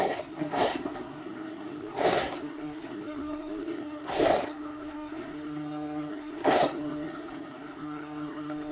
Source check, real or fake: fake